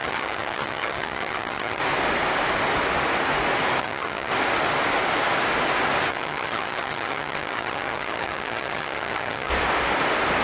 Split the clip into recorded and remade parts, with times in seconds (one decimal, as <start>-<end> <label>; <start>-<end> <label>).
0.0-1.8 remade; 1.8-3.8 recorded; 3.8-4.3 remade; 4.3-6.1 recorded; 6.1-9.5 remade; 9.5-10.4 recorded